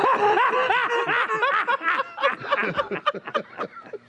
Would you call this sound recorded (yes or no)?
yes